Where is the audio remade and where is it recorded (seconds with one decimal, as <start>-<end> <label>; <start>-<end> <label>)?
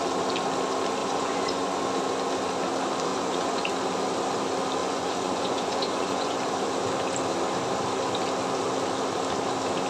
0.0-1.0 recorded; 1.0-1.8 remade; 1.8-3.1 recorded; 3.1-3.7 remade; 3.7-4.8 recorded; 4.8-6.4 remade; 6.4-9.9 recorded